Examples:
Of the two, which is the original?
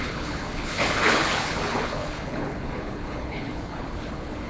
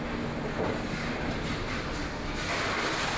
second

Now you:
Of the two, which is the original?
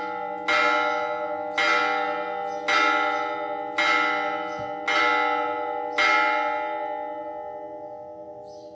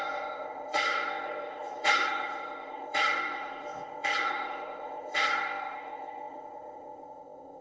first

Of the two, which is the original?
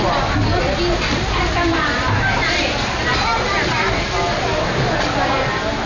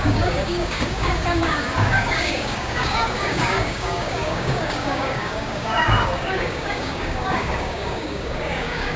first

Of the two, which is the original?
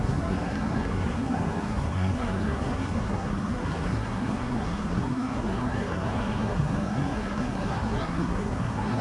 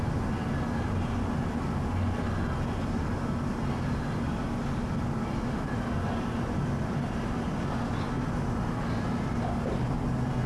second